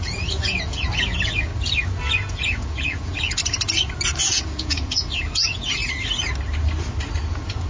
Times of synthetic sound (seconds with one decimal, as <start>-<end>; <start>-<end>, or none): 0.0-1.5; 2.3-3.4; 4.2-5.8; 7.3-7.7

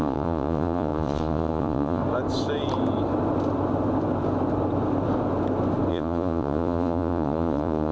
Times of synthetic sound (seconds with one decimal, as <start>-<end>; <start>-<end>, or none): 0.0-2.0; 5.9-7.9

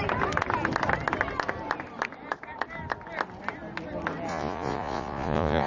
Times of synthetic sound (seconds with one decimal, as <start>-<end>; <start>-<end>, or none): 4.3-5.7

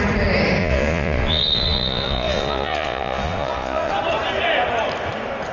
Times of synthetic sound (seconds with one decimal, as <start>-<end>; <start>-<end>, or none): 0.6-3.9